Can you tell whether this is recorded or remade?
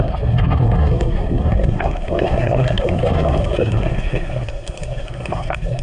remade